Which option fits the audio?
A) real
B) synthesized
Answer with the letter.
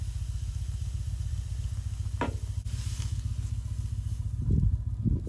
A